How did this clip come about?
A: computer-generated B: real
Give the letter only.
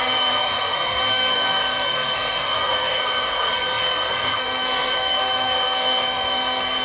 A